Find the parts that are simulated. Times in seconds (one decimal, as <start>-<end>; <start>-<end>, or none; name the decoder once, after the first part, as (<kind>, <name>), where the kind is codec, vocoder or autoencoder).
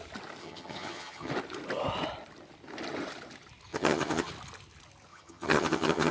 0.4-1.3 (vocoder, HiFi-GAN); 3.7-4.3; 5.1-6.1